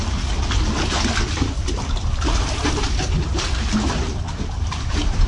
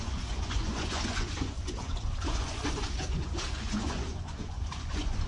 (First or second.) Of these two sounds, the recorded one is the first